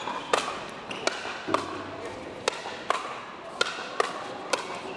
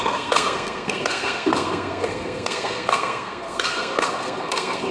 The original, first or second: first